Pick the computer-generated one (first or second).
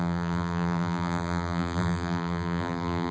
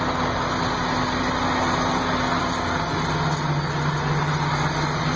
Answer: first